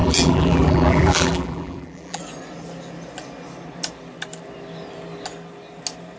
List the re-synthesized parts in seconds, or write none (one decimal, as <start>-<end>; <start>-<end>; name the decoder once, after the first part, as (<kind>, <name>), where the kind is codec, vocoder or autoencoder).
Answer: 0.0-2.2 (vocoder, BigVGAN v2)